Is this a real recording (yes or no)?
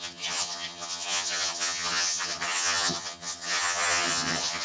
no